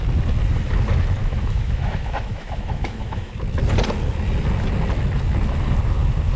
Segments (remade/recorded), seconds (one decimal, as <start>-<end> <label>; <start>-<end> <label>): 0.0-1.2 recorded; 1.2-3.4 remade; 3.4-6.4 recorded